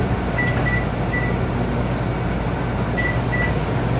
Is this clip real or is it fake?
real